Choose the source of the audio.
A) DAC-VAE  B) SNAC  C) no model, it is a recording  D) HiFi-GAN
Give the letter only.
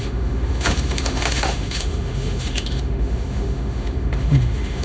A